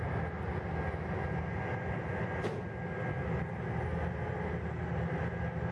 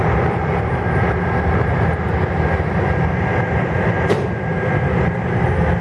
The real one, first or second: first